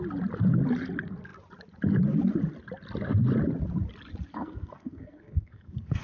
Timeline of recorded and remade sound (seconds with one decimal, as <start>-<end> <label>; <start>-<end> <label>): 0.0-4.3 recorded; 4.3-6.0 remade